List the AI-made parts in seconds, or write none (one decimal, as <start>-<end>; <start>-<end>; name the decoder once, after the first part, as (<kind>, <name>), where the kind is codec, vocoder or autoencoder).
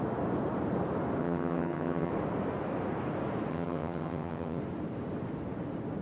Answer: 1.2-2.1 (vocoder, HiFi-GAN); 3.5-4.6